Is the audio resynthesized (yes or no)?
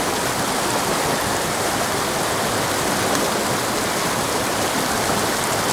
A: no